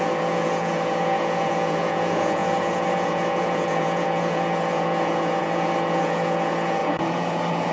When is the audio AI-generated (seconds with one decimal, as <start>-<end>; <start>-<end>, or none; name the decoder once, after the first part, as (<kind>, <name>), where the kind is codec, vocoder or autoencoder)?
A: 0.0-7.7 (vocoder, Vocos)